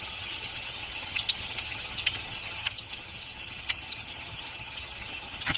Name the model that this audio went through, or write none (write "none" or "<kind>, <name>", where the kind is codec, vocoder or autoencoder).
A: vocoder, HiFi-GAN